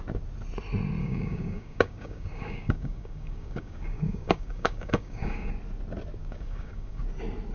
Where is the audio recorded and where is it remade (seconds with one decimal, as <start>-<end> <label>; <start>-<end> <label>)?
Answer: 0.0-1.0 recorded; 1.0-5.5 remade; 5.5-6.2 recorded; 6.2-7.0 remade; 7.0-7.5 recorded